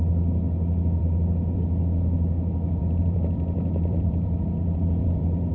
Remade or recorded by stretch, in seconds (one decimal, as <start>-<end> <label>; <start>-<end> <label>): 0.0-1.0 recorded; 1.0-1.6 remade; 1.6-2.8 recorded; 2.8-5.5 remade